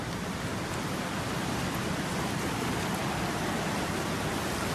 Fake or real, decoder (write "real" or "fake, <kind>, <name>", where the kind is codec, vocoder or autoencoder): real